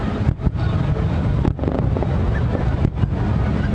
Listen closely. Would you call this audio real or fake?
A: real